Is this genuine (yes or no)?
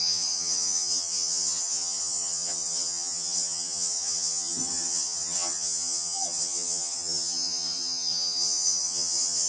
no